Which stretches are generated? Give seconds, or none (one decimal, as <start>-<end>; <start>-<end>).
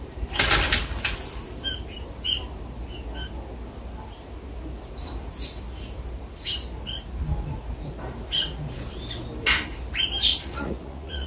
10.3-11.3